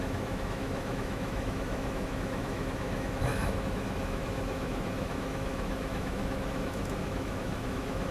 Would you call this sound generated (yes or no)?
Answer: yes